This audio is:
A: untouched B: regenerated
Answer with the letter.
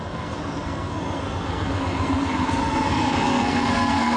B